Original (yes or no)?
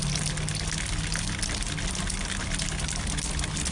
yes